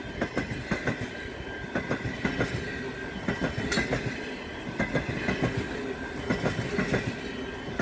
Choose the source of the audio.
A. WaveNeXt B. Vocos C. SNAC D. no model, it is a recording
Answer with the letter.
D